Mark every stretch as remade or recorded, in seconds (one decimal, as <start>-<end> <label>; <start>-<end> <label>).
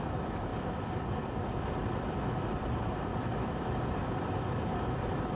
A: 0.0-0.5 remade; 0.5-2.5 recorded; 2.5-3.1 remade; 3.1-4.5 recorded; 4.5-5.4 remade